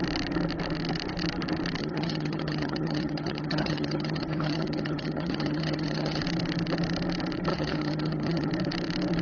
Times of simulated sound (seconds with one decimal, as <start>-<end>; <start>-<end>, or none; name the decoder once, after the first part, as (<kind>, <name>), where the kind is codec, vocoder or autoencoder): 1.8-6.2 (vocoder, HiFi-GAN); 7.5-8.5

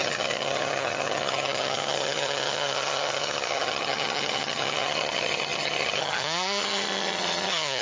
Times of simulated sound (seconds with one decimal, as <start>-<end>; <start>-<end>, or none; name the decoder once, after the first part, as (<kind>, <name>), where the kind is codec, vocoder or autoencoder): 0.0-7.8 (vocoder, HiFi-GAN)

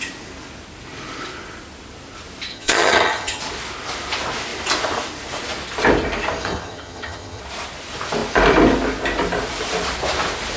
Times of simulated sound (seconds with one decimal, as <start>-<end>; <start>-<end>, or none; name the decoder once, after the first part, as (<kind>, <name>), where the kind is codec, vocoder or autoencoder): 2.5-3.4 (vocoder, HiFi-GAN); 6.4-7.4